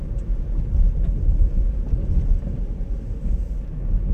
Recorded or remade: recorded